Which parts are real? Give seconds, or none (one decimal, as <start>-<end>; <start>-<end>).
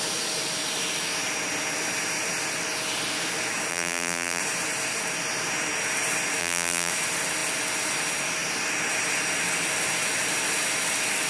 0.0-3.7; 4.4-6.4; 6.9-11.3